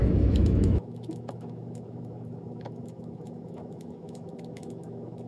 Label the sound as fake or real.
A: fake